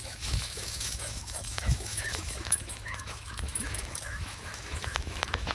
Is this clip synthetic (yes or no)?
yes